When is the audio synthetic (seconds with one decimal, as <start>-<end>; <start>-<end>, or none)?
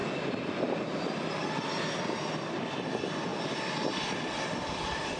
none